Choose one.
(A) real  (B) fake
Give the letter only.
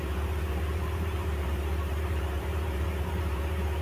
B